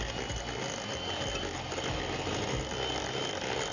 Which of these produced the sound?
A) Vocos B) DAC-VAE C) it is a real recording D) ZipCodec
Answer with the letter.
C